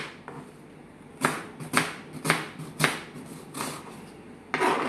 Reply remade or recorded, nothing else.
recorded